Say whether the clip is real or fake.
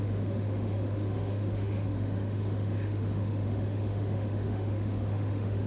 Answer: fake